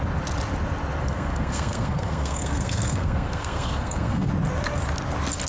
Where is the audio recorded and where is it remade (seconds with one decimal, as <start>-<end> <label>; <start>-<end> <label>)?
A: 0.0-1.0 recorded; 1.0-4.3 remade; 4.3-5.5 recorded